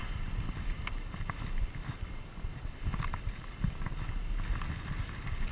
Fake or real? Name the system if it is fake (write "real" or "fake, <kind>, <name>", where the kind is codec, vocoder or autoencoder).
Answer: real